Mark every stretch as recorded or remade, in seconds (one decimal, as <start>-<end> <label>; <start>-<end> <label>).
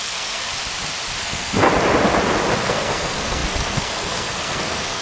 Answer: 0.0-0.5 remade; 0.5-1.2 recorded; 1.2-1.7 remade; 1.7-2.6 recorded; 2.6-5.0 remade